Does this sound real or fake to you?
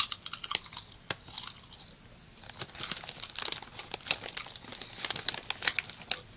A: real